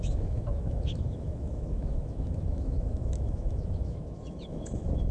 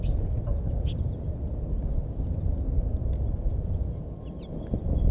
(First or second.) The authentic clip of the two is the second